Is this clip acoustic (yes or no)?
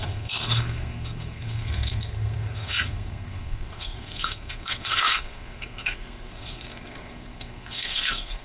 no